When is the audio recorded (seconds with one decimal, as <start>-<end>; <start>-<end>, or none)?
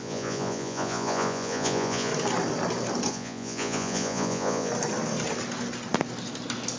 2.1-3.1; 4.7-6.8